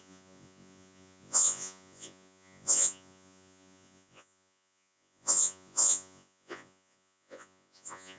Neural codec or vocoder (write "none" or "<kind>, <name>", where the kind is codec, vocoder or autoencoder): vocoder, Vocos